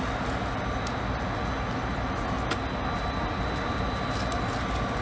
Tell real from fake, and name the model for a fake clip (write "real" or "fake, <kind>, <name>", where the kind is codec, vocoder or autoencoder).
real